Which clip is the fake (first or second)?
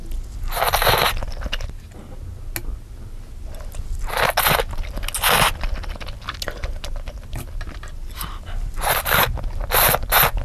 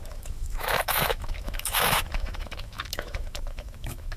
second